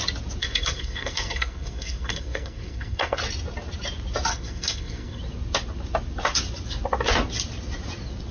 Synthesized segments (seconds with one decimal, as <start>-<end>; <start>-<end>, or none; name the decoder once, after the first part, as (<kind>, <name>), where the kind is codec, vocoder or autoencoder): 0.4-3.2 (codec, SNAC); 4.3-5.2